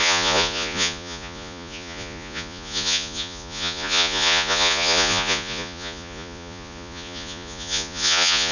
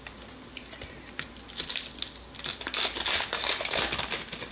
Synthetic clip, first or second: first